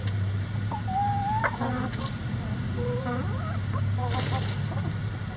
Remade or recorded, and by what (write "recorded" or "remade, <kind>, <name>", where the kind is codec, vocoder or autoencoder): recorded